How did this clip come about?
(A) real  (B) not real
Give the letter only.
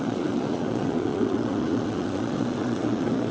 B